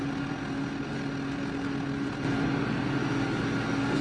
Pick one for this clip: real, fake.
real